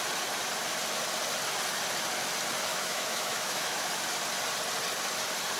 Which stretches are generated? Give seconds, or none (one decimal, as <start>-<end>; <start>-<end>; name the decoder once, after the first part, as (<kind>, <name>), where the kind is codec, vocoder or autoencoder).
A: 2.7-3.9 (autoencoder, DAC-VAE)